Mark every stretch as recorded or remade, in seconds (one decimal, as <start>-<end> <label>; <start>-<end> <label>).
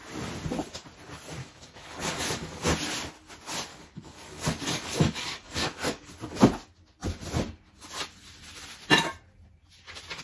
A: 0.0-1.4 recorded; 1.4-2.6 remade; 2.6-3.7 recorded; 3.7-6.1 remade; 6.1-10.2 recorded